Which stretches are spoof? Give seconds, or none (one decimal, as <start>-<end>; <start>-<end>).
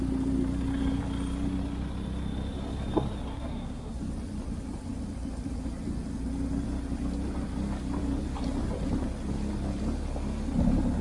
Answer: 3.3-3.9